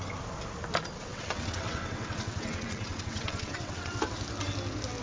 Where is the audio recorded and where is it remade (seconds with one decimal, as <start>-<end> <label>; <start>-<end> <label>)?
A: 0.0-1.1 recorded; 1.1-4.1 remade; 4.1-5.0 recorded